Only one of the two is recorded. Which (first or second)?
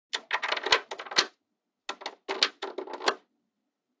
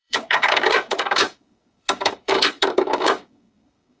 first